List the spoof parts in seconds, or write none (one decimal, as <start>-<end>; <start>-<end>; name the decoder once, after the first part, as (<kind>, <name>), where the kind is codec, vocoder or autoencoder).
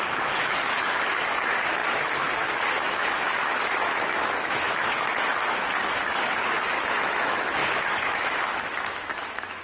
0.0-9.6 (autoencoder, DAC-VAE)